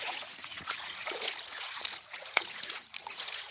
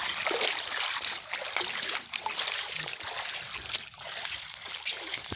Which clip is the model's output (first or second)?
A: first